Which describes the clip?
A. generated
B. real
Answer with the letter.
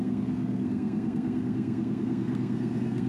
A